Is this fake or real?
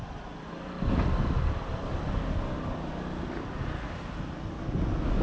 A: real